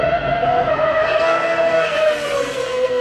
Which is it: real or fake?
fake